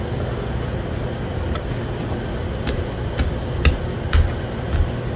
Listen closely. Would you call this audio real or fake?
real